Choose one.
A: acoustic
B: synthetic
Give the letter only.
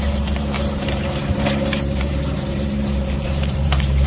B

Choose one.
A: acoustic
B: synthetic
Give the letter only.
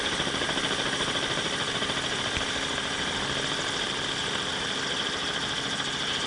A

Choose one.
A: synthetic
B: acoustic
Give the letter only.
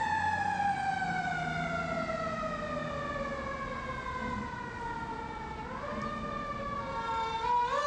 B